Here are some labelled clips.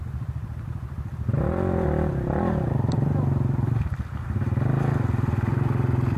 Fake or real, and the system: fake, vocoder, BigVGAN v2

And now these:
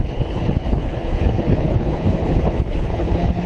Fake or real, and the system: fake, codec, HILCodec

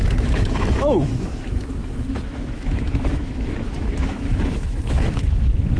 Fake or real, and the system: fake, autoencoder, DAC-VAE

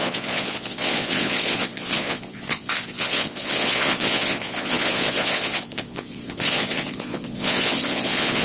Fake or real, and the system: fake, vocoder, Vocos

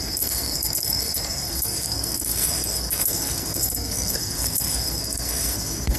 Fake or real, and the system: fake, codec, SNAC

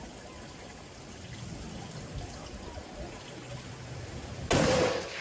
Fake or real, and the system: real